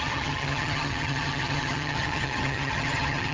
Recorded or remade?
remade